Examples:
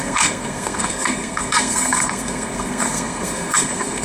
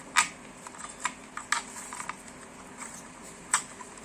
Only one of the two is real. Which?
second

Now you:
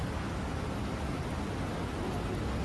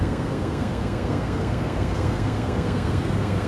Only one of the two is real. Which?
first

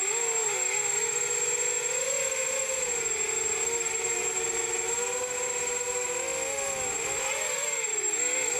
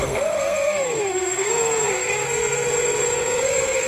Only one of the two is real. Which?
first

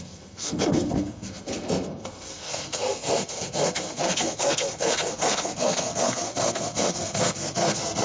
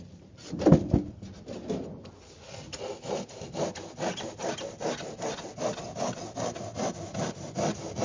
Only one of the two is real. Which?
second